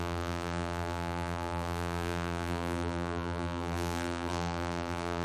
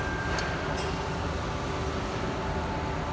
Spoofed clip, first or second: first